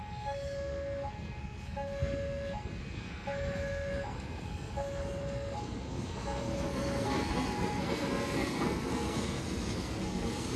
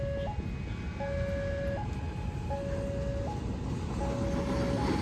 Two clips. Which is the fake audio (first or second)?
first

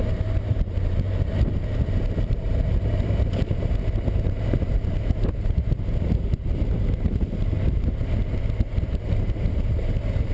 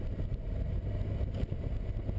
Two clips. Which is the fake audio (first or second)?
first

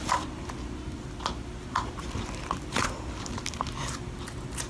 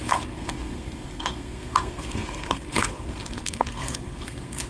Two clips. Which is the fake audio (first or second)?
second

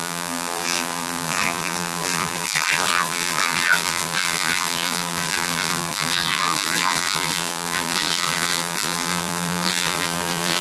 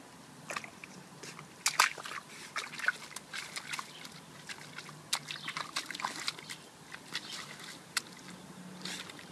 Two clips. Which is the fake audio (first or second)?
first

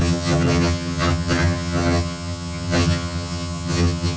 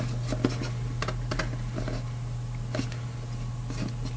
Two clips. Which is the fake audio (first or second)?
first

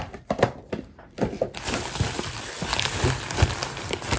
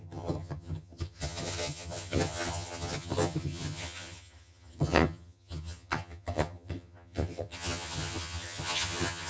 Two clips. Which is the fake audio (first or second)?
second